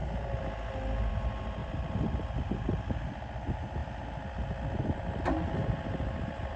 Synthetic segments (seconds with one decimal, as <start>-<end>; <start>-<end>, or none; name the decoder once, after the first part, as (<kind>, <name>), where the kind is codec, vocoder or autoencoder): 1.6-2.4 (vocoder, BigVGAN v2)